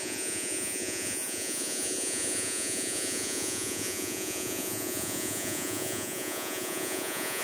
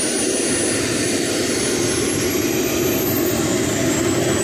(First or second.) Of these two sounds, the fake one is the first